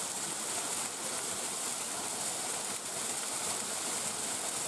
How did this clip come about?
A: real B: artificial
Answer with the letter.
A